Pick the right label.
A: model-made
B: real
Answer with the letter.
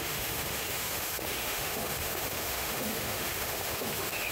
A